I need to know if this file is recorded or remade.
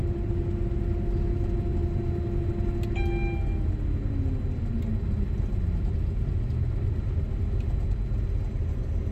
recorded